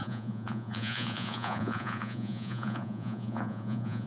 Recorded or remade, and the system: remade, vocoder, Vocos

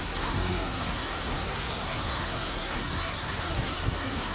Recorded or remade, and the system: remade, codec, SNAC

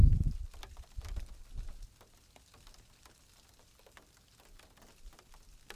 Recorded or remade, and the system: recorded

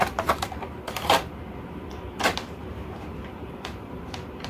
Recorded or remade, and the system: remade, vocoder, BigVGAN v2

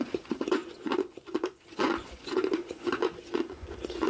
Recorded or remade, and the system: remade, vocoder, Vocos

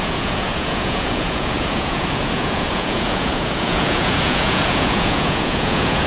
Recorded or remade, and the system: remade, vocoder, Vocos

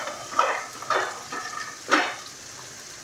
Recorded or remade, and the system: recorded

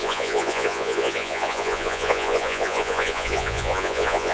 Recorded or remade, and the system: remade, vocoder, Vocos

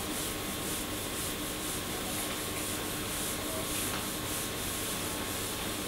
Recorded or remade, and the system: recorded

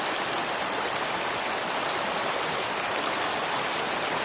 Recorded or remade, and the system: recorded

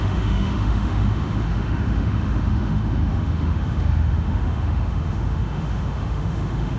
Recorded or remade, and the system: remade, autoencoder, DAC-VAE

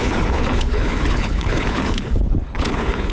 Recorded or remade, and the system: remade, codec, HILCodec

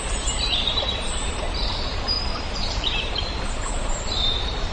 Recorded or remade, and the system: remade, vocoder, BigVGAN v2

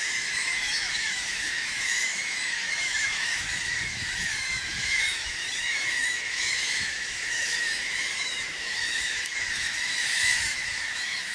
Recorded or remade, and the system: remade, autoencoder, DAC-VAE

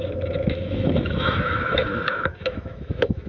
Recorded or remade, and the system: remade, autoencoder, DAC-VAE